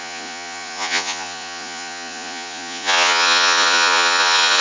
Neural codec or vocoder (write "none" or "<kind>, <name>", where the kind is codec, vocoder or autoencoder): vocoder, Vocos